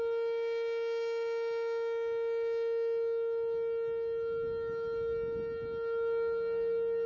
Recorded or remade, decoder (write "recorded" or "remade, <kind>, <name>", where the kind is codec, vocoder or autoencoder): recorded